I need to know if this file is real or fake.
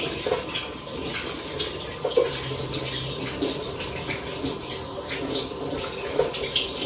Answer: real